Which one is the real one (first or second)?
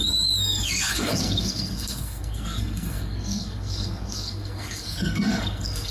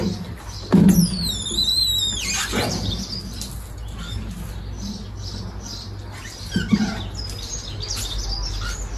second